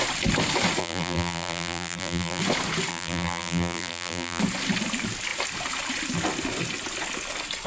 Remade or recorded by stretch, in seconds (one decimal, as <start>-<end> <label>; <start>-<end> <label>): 0.0-0.8 recorded; 0.8-2.4 remade; 2.4-2.9 recorded; 2.9-4.4 remade; 4.4-7.7 recorded